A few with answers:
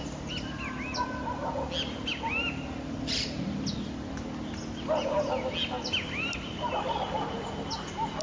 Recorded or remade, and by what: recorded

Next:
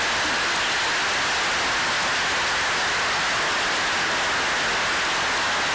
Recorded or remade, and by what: recorded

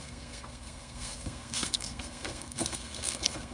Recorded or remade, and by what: remade, codec, SNAC